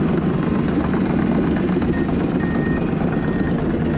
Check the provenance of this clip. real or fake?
real